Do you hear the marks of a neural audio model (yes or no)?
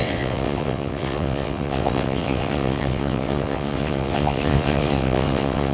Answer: yes